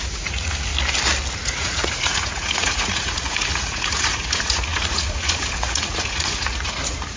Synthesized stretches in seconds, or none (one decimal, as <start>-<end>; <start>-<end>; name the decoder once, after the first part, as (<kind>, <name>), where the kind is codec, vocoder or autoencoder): 0.0-0.7 (vocoder, Vocos); 1.3-7.2